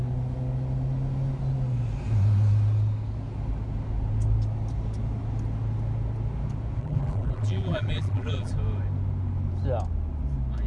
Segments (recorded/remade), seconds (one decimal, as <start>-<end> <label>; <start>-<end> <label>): 0.0-6.8 recorded; 6.8-8.5 remade; 8.5-10.7 recorded